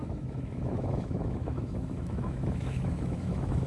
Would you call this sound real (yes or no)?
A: no